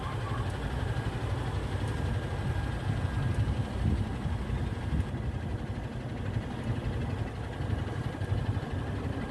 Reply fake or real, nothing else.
real